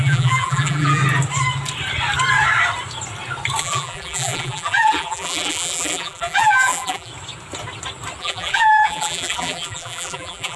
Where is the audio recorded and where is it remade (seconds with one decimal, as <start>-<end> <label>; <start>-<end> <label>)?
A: 0.0-1.0 remade; 1.0-3.6 recorded; 3.6-7.1 remade; 7.1-8.2 recorded; 8.2-10.6 remade